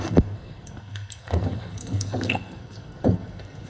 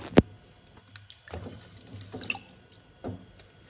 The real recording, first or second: second